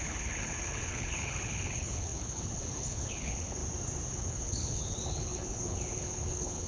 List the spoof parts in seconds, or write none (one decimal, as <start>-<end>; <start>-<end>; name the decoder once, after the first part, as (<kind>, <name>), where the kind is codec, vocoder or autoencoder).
0.0-3.6 (codec, HILCodec); 4.1-6.7